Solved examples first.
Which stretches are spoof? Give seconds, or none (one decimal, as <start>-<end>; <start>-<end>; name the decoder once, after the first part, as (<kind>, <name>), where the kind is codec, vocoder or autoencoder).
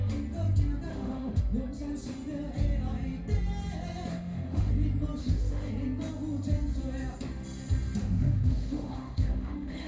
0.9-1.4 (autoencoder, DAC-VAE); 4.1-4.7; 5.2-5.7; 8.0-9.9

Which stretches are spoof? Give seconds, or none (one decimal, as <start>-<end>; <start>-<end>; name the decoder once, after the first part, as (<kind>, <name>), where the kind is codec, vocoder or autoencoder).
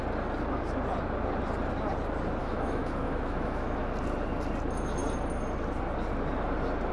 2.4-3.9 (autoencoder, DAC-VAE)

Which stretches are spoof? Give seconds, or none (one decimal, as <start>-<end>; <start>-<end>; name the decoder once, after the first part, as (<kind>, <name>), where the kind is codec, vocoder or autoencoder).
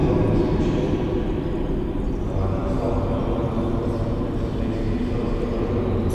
none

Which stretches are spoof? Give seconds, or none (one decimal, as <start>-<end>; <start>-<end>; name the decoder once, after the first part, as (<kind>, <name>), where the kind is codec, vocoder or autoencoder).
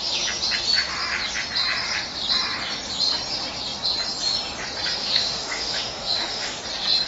5.0-6.6 (autoencoder, DAC-VAE)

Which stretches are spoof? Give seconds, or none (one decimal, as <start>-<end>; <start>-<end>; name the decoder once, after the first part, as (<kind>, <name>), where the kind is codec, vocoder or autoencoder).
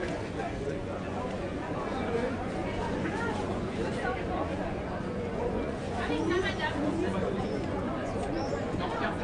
0.0-9.2 (vocoder, Vocos)